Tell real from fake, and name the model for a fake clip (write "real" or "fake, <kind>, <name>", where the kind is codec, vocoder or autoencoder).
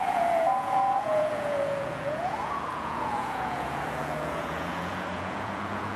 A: fake, vocoder, Vocos